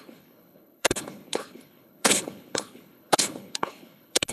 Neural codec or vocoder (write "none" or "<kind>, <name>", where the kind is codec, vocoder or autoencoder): codec, HILCodec